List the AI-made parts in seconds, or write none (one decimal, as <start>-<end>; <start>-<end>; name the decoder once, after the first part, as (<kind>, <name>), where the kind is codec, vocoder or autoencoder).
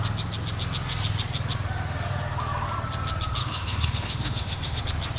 3.4-4.8 (autoencoder, DAC-VAE)